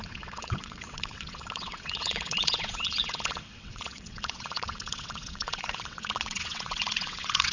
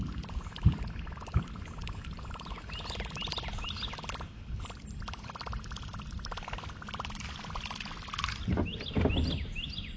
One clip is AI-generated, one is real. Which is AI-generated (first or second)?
first